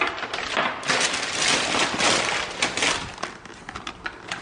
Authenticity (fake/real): real